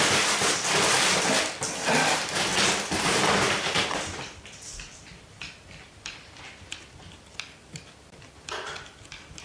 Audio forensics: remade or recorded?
remade